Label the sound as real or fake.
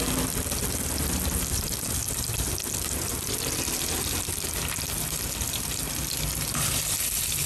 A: real